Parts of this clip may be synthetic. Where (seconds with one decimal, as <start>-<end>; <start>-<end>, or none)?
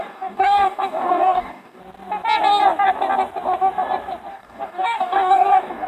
0.0-1.8; 4.3-5.9